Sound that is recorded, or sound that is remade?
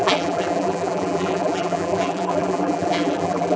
remade